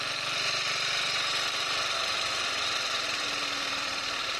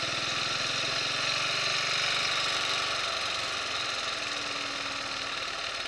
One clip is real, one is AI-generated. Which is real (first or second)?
second